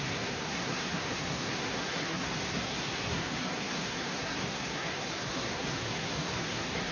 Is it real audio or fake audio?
fake